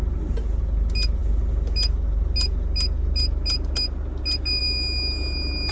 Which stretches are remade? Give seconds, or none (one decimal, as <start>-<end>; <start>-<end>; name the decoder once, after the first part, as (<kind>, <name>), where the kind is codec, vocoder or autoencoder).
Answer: none